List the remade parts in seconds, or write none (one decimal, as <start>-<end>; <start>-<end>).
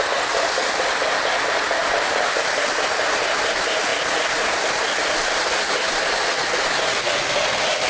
5.8-6.3